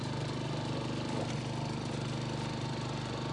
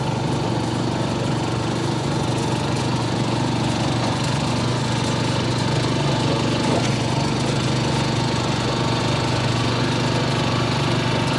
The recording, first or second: first